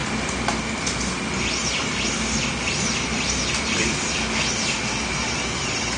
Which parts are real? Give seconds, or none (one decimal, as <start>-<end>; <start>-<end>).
0.0-6.0